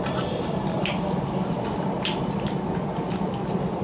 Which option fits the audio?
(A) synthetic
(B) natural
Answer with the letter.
B